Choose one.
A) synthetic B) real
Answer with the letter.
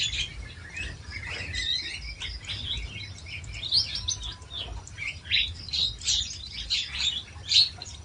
B